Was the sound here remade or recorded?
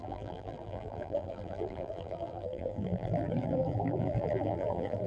remade